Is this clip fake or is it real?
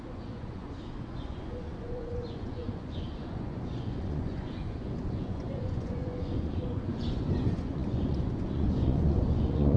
fake